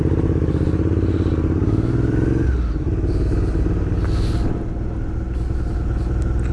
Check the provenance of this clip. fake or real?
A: real